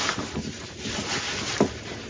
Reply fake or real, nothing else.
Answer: real